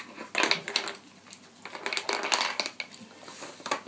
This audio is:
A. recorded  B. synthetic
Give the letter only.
A